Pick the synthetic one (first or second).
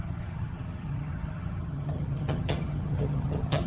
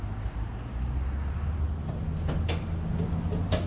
first